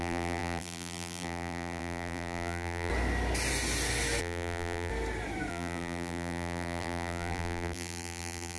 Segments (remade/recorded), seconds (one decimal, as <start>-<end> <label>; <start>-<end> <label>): 0.0-2.9 remade; 2.9-4.2 recorded; 4.2-4.9 remade; 4.9-5.5 recorded; 5.5-8.6 remade